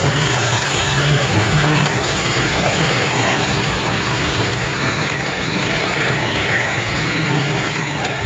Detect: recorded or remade remade